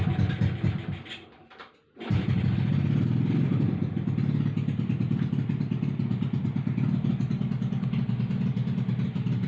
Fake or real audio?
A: real